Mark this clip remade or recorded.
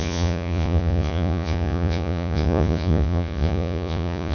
remade